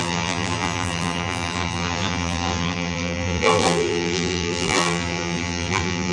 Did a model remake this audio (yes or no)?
yes